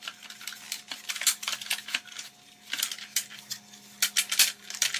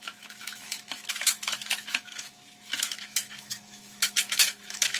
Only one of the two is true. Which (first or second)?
first